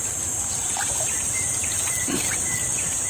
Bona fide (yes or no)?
no